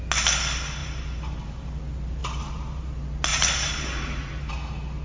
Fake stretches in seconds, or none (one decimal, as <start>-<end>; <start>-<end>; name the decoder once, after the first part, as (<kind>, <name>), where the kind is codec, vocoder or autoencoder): 0.8-1.8 (vocoder, BigVGAN v2); 2.2-2.9; 3.3-4.5